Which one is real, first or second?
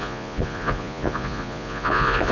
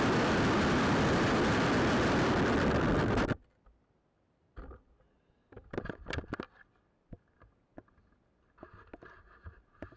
second